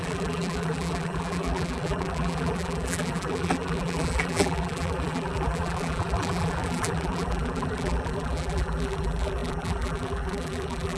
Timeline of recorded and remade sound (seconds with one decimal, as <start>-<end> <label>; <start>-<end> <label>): 0.0-11.0 remade